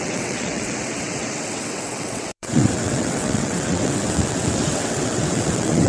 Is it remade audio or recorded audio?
remade